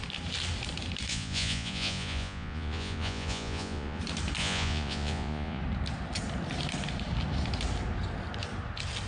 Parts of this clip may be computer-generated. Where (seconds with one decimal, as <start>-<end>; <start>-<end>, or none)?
1.1-4.0; 4.4-5.6